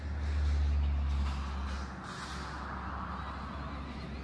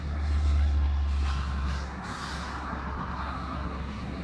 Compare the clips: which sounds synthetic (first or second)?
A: second